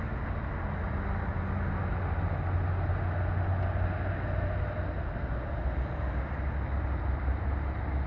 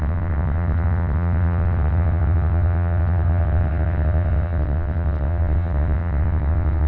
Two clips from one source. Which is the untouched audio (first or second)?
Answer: first